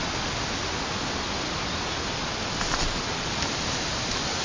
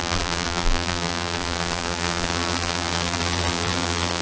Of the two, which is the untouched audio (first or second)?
first